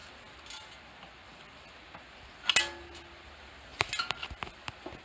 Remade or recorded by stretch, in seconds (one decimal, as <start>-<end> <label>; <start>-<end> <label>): 0.0-5.0 recorded